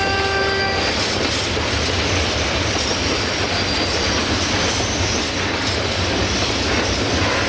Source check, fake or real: real